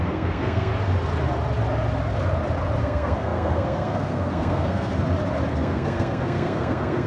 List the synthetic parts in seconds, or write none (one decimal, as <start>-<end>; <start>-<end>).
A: 0.0-0.7; 2.8-4.9; 5.5-7.1